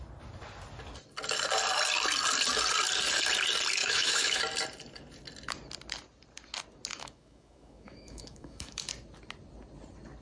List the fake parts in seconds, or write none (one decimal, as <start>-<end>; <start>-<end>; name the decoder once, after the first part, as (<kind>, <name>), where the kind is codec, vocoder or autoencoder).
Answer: 3.8-4.4 (autoencoder, DAC-VAE); 6.9-8.9